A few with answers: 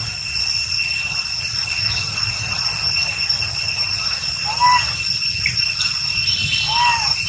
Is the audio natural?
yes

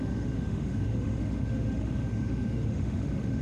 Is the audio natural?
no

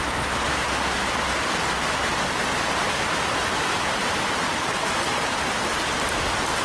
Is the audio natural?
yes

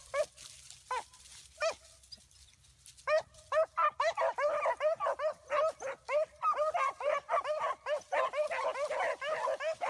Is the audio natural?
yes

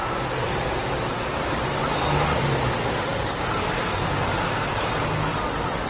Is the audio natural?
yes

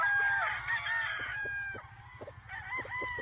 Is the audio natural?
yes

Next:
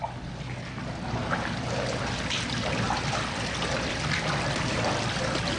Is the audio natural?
yes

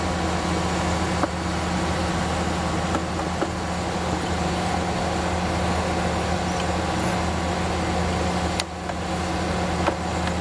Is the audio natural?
yes